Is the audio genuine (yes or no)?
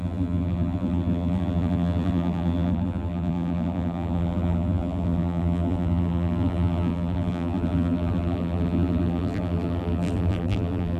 no